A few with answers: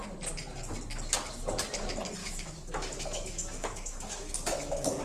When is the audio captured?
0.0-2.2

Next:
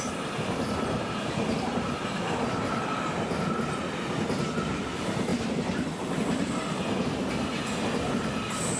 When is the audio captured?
0.0-8.8